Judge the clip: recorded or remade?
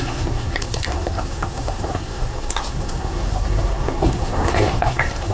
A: remade